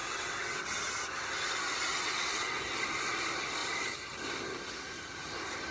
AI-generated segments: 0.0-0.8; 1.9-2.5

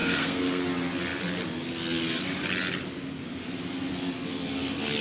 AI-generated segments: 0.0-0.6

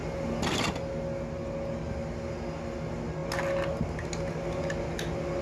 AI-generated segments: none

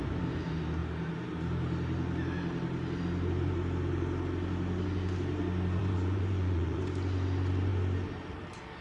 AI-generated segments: 5.8-6.8

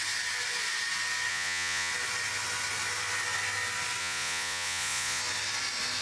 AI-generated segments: 1.3-1.9; 4.0-5.2

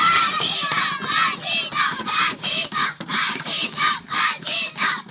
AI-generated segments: 0.0-0.8; 1.8-5.1